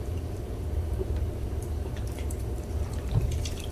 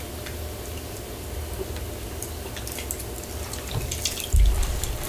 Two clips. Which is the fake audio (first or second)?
first